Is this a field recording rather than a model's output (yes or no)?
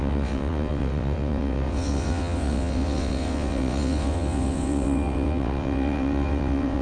no